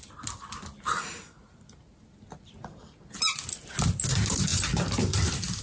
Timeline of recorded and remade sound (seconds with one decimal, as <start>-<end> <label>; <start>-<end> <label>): 0.0-5.6 recorded

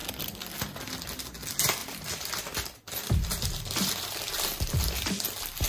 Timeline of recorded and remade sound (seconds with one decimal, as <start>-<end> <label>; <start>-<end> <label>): 0.0-1.8 recorded; 1.8-4.3 remade; 4.3-5.7 recorded

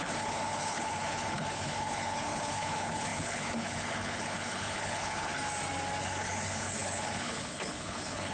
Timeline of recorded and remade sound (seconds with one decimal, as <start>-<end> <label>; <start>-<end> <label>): 0.0-5.3 remade; 5.3-6.0 recorded; 6.0-8.3 remade

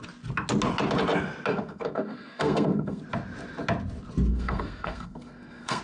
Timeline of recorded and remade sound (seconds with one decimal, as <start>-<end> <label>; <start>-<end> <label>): 0.0-1.5 recorded; 1.5-3.0 remade; 3.0-4.3 recorded; 4.3-5.8 remade